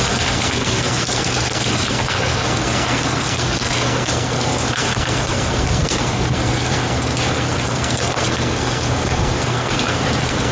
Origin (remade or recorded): remade